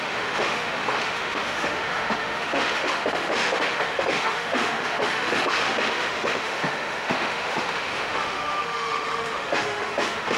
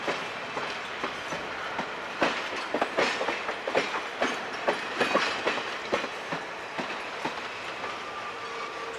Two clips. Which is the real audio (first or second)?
second